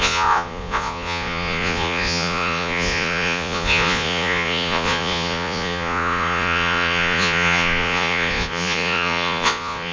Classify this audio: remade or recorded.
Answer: remade